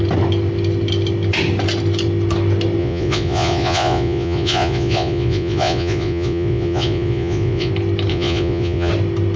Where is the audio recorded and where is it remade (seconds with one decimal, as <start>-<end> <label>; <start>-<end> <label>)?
0.0-2.8 recorded; 2.8-7.7 remade; 7.7-8.1 recorded; 8.1-8.9 remade; 8.9-9.4 recorded

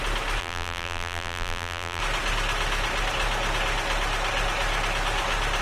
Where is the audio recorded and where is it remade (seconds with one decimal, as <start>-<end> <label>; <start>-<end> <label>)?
0.0-0.4 recorded; 0.4-2.0 remade; 2.0-5.6 recorded

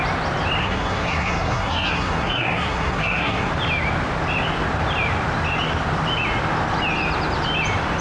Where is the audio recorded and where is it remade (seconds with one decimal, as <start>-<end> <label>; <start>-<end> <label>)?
0.0-0.6 recorded; 0.6-3.5 remade; 3.5-8.0 recorded

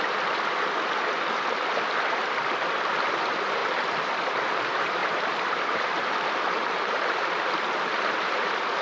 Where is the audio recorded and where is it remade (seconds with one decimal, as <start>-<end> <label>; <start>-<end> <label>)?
0.0-8.8 remade

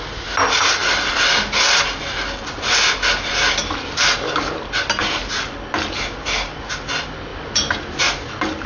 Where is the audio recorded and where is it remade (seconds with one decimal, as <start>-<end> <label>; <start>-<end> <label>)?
0.0-8.7 recorded

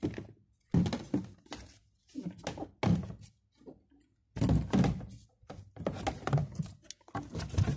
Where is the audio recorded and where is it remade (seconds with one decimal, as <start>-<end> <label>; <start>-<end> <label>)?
0.0-7.8 recorded